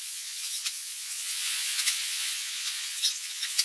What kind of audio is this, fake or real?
fake